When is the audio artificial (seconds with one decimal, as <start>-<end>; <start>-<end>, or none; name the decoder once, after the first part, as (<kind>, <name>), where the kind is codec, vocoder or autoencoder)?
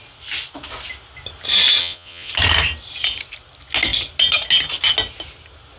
1.8-2.3 (vocoder, Vocos)